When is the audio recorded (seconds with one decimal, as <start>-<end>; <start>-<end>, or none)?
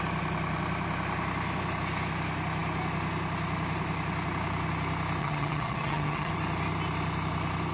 0.0-5.2; 6.3-7.7